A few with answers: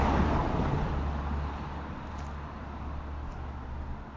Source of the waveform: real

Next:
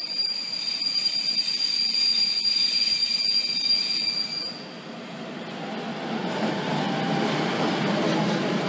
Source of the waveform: real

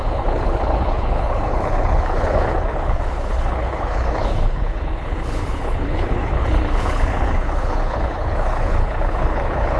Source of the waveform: fake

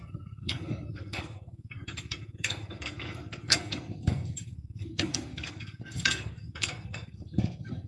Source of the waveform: fake